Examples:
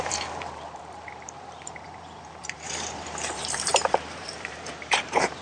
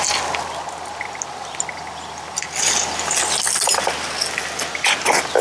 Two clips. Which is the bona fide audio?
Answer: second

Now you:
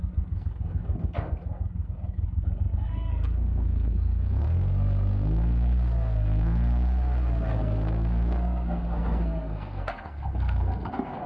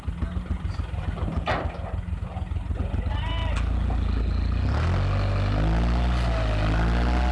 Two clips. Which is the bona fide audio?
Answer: second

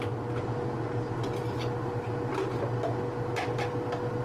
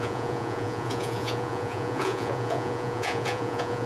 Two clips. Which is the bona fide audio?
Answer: first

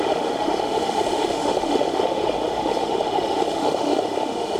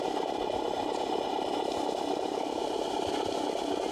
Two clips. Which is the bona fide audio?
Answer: second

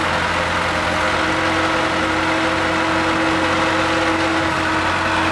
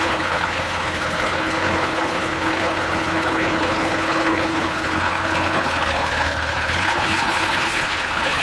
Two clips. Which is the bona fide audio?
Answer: first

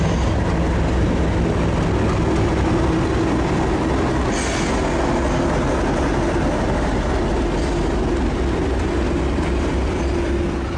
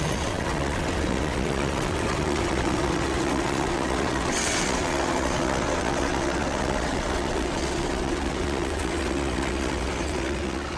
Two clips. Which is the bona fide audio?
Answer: first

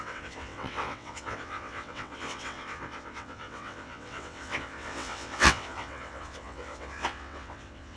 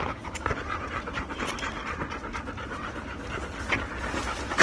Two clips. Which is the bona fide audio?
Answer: second